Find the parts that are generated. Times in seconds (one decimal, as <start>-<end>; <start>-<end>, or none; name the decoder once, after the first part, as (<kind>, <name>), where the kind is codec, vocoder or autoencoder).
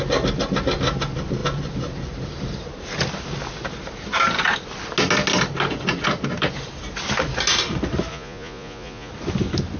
8.1-9.1 (vocoder, Vocos)